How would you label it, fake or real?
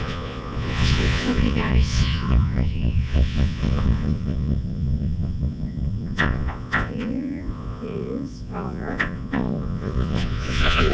fake